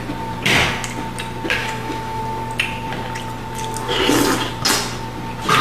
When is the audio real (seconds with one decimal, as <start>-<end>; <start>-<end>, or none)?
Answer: 0.0-1.6; 2.2-5.6